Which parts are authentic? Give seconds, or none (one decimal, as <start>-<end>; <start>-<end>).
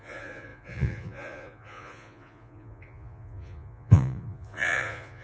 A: none